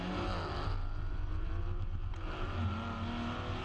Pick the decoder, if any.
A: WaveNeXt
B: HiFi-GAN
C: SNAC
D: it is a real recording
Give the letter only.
D